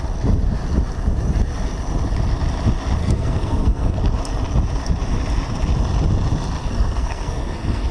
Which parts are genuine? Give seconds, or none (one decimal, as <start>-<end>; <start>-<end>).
0.0-3.0; 4.0-6.6